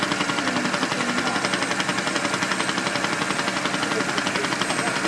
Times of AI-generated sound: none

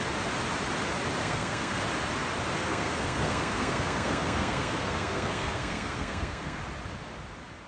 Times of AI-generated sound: 1.2-1.8 (codec, SNAC); 2.6-6.6

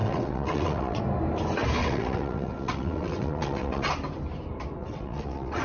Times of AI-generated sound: 0.0-1.0 (vocoder, WaveNeXt); 1.8-3.9; 4.8-5.6